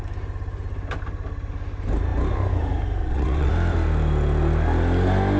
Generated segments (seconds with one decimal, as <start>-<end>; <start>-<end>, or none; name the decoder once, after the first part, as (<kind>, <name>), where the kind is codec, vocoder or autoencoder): 3.0-3.5 (vocoder, WaveNeXt)